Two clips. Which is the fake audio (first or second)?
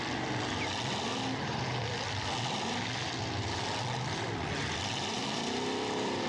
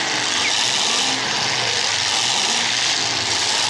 first